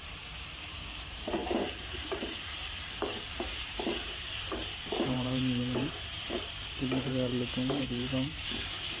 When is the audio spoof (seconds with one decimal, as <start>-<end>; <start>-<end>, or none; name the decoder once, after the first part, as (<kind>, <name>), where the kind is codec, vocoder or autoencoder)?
0.0-7.3 (vocoder, BigVGAN v2); 7.8-9.0